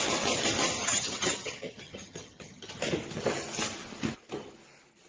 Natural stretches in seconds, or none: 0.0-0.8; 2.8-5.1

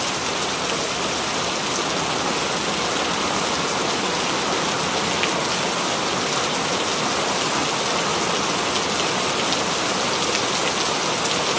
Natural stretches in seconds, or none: 0.0-11.6